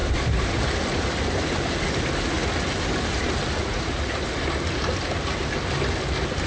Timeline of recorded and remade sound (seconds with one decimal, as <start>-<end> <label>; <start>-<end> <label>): 0.0-3.6 recorded; 3.6-4.1 remade; 4.1-6.5 recorded